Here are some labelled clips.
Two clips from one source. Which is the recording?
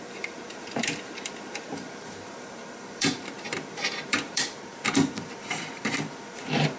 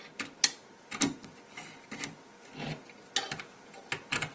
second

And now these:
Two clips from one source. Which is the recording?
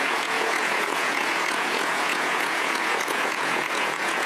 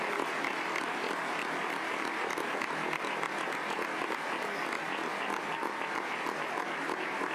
second